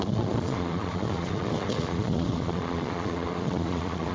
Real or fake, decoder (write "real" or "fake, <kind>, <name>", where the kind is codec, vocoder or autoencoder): fake, vocoder, Vocos